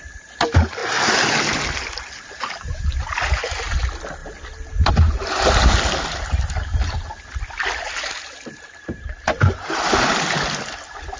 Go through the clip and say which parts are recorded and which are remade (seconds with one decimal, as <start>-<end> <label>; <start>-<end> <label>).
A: 0.0-11.2 recorded